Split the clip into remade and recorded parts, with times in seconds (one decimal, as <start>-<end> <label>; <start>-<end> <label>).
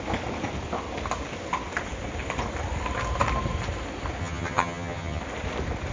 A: 0.0-4.2 recorded; 4.2-5.2 remade; 5.2-5.9 recorded